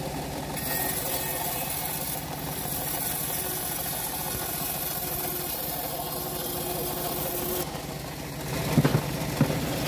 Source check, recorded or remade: recorded